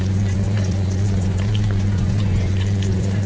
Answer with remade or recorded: remade